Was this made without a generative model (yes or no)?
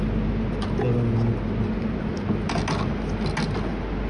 yes